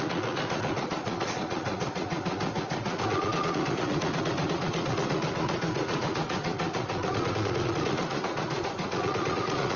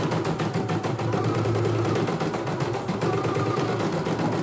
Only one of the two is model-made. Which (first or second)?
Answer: first